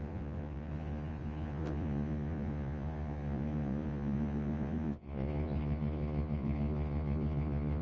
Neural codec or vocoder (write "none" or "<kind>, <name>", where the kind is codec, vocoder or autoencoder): vocoder, Vocos